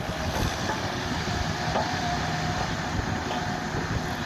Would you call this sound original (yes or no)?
yes